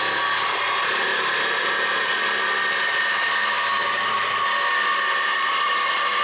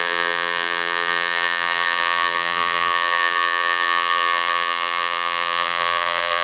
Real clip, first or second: first